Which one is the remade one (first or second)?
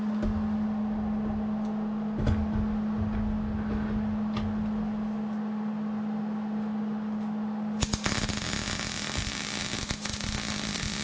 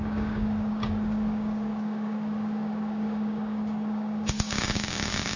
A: second